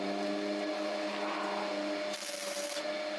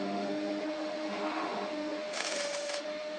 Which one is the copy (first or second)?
second